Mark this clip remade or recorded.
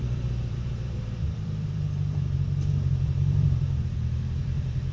remade